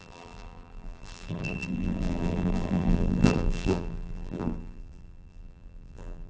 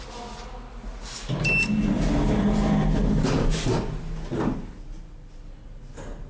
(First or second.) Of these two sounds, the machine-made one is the first